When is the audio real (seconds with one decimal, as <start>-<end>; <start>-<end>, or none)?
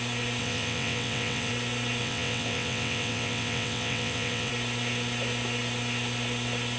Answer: 0.0-0.4; 1.5-2.0; 4.5-6.8